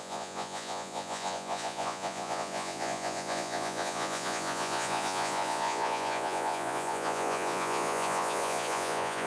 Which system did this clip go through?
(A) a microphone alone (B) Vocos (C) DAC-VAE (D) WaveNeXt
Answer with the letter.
B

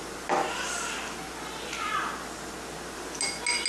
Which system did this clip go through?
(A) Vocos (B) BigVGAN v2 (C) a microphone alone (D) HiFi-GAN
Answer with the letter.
C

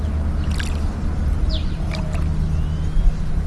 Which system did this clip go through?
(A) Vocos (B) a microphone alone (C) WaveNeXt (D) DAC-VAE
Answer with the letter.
B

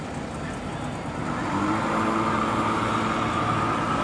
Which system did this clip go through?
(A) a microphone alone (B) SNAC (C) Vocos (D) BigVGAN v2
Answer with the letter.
A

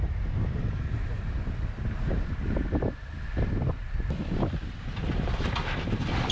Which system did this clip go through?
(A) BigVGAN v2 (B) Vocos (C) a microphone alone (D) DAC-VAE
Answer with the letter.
C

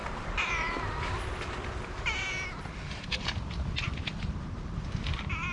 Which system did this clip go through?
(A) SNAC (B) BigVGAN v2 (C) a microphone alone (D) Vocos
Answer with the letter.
C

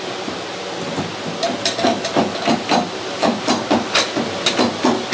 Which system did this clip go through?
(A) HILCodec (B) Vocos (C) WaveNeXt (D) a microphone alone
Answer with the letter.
D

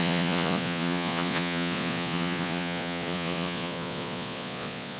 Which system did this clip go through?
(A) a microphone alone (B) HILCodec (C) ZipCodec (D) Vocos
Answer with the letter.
D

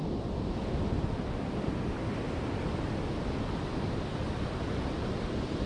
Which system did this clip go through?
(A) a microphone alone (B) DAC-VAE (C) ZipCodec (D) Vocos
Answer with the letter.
A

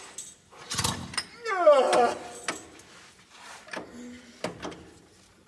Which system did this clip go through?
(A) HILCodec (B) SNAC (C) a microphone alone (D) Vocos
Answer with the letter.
C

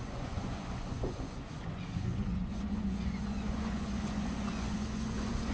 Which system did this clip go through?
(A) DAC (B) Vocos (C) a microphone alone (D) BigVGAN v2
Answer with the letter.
B